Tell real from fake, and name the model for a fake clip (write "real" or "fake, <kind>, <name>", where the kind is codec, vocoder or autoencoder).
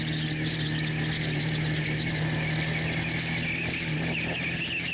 real